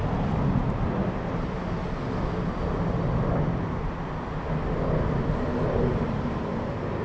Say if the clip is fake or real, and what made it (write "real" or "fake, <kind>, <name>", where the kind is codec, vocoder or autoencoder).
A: real